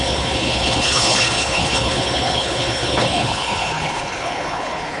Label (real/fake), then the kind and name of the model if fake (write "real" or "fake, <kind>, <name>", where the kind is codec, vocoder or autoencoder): fake, codec, HILCodec